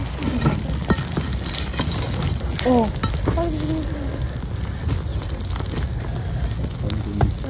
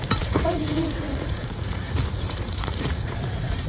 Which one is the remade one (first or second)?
second